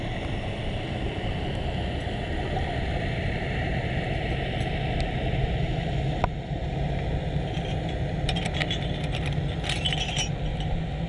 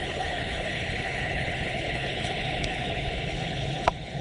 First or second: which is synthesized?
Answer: second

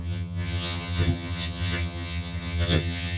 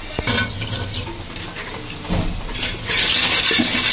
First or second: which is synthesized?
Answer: first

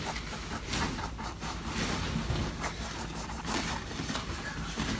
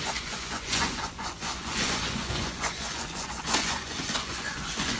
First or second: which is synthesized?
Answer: second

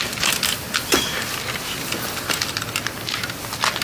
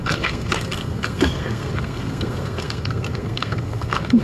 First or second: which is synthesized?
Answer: second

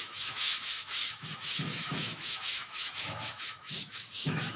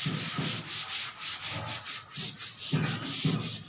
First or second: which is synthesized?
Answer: first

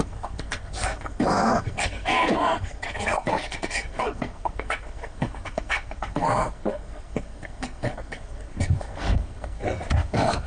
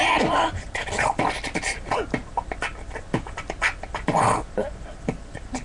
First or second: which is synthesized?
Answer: first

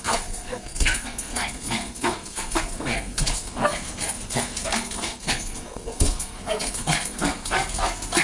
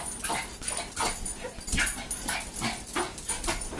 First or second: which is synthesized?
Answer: first